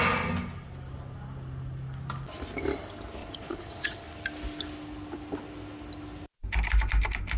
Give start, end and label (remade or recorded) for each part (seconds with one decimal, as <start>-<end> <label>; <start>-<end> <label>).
0.0-3.2 recorded; 3.2-4.0 remade; 4.0-7.4 recorded